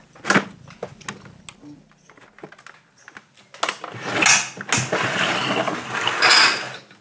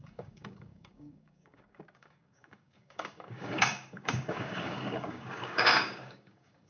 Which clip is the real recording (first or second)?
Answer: first